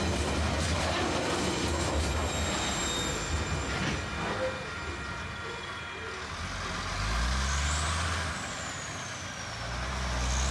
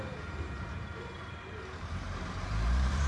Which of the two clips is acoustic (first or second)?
first